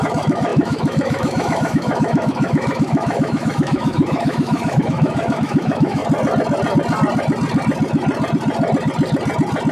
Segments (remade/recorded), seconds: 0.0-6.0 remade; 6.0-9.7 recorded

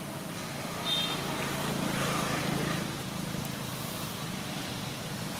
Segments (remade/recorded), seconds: 0.0-5.4 recorded

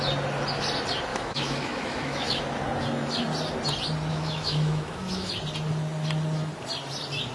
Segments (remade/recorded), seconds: 0.0-1.1 recorded; 1.1-2.4 remade; 2.4-4.1 recorded; 4.1-5.3 remade; 5.3-7.3 recorded

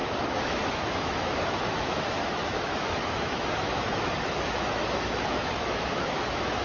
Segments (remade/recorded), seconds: 0.0-6.6 remade

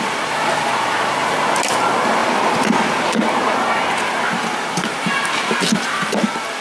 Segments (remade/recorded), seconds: 0.0-6.6 recorded

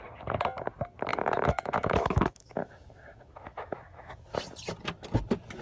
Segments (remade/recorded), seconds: 0.0-1.1 recorded; 1.1-4.1 remade; 4.1-5.6 recorded

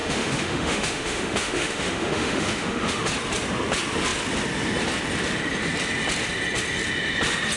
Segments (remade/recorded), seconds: 0.0-3.1 remade; 3.1-7.6 recorded

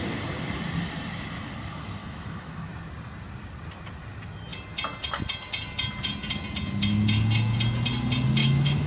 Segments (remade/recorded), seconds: 0.0-2.0 recorded; 2.0-2.7 remade; 2.7-8.4 recorded; 8.4-8.9 remade